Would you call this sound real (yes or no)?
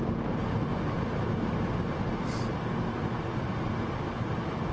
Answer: yes